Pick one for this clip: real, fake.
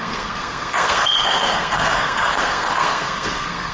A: fake